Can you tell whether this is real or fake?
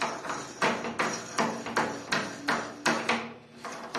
real